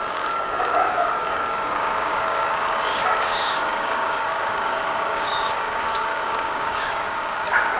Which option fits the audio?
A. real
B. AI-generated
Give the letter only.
B